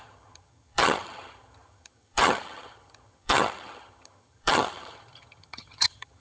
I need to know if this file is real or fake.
fake